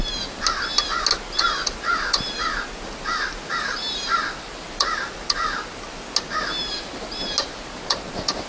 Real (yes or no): yes